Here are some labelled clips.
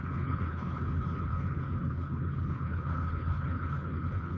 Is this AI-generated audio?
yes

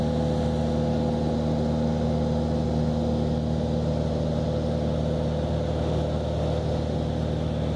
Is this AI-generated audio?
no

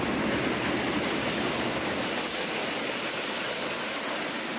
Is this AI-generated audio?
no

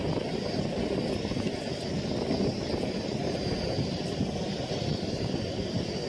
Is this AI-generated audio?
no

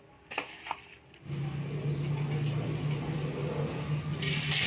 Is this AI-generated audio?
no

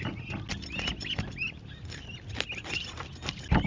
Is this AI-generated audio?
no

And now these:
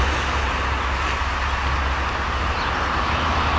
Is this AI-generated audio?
no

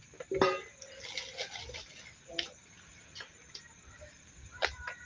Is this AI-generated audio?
no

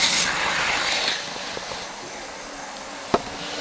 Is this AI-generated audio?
no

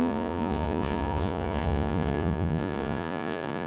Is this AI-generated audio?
yes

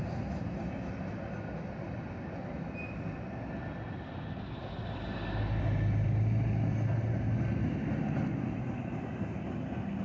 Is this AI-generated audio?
no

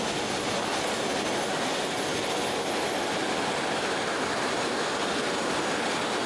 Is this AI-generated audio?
no